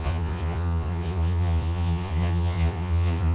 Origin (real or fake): fake